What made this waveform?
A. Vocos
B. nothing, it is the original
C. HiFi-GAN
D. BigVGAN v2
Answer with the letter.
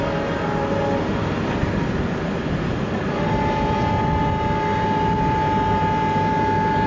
B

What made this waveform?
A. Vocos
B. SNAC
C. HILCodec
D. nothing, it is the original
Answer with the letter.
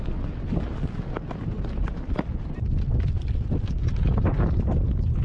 D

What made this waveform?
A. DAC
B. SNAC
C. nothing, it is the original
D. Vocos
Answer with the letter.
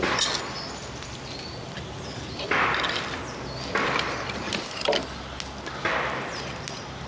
C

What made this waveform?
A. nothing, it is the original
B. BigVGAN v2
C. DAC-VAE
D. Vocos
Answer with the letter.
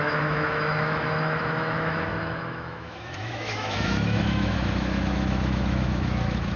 C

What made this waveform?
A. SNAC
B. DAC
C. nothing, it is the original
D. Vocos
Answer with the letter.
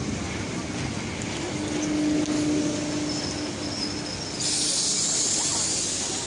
C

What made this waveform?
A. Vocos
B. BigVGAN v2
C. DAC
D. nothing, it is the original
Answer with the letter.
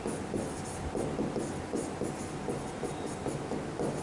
D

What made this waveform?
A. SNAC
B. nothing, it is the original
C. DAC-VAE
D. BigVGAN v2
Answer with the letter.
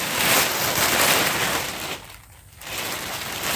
B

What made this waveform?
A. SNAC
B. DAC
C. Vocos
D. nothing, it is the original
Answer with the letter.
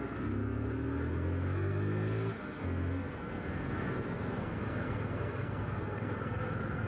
A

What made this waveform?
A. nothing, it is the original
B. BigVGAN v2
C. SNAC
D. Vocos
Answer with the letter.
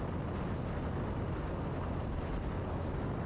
A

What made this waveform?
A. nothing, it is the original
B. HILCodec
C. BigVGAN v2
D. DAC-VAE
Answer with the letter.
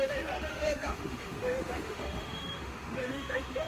D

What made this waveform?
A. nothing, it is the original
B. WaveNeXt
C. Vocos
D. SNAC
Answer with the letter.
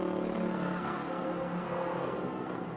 D